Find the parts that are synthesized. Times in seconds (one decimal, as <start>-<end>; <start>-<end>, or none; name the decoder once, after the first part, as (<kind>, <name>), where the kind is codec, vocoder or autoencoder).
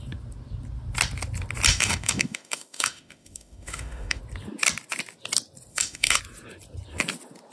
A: 1.7-4.2 (autoencoder, DAC-VAE); 5.7-6.2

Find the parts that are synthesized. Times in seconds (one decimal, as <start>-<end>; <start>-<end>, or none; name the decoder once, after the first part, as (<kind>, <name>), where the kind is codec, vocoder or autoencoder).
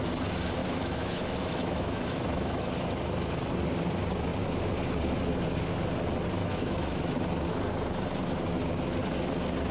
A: 0.6-2.6 (autoencoder, DAC-VAE); 6.4-7.0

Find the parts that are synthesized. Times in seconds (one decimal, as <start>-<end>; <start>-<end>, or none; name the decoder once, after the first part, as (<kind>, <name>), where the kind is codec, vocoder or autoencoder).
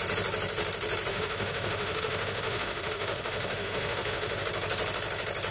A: 1.1-4.4 (autoencoder, DAC-VAE)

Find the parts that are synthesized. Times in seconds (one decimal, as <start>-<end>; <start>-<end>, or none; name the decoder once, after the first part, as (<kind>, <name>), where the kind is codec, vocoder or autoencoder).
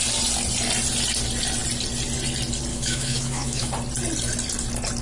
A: 2.7-3.7 (autoencoder, DAC-VAE)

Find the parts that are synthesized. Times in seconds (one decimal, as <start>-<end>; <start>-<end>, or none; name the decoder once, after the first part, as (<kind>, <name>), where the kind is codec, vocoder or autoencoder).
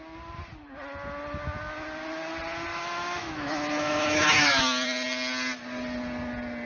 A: 2.7-4.6 (autoencoder, DAC-VAE)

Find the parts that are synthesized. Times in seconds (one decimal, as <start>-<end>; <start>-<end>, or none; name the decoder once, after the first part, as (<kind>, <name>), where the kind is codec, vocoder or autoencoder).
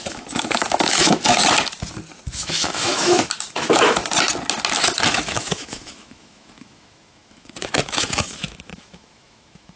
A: 0.0-1.4 (autoencoder, DAC-VAE); 2.3-4.0; 5.1-9.8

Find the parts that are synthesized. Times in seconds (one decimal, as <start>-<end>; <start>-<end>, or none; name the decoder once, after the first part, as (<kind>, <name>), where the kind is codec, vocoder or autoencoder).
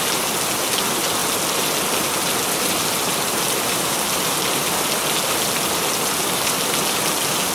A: none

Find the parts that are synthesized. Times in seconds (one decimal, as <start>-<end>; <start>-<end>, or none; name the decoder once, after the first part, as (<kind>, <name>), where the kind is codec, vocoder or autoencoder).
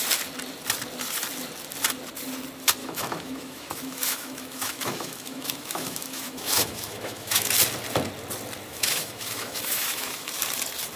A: 2.8-7.5 (autoencoder, DAC-VAE); 8.7-10.3